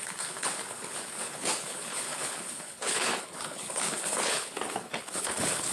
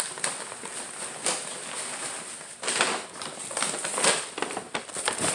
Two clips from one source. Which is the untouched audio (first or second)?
second